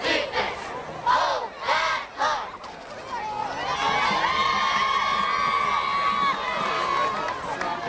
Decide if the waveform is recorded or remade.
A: recorded